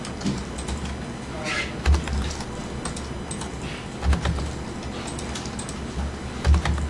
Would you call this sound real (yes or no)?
yes